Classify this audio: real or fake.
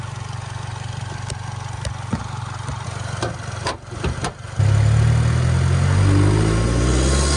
real